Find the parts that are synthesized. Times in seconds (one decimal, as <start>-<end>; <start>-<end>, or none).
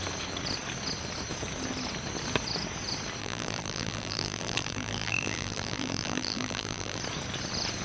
3.2-7.0